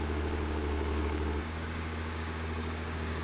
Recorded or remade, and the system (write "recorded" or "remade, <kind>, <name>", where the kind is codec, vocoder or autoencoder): remade, codec, DAC